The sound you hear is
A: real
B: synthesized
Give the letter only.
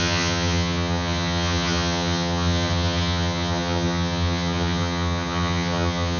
B